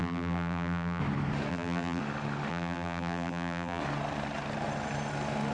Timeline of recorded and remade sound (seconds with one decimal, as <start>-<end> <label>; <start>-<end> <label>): 0.0-1.0 remade; 1.0-1.5 recorded; 1.5-2.0 remade; 2.0-2.5 recorded; 2.5-3.8 remade; 3.8-5.5 recorded